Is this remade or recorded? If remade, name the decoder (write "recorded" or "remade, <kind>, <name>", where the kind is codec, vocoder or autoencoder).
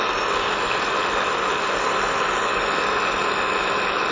recorded